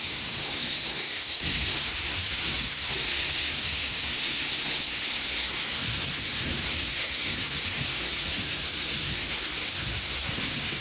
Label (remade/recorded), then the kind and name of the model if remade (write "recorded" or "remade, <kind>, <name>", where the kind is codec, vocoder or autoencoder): remade, codec, SNAC